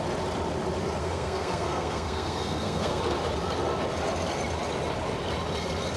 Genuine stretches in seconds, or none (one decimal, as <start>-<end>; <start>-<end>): 0.0-1.0; 3.0-6.0